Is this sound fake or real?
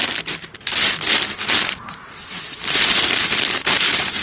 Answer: real